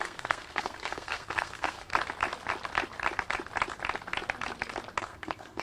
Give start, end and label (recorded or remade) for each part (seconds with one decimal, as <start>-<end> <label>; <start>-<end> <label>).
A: 0.0-1.9 remade; 1.9-5.0 recorded; 5.0-5.6 remade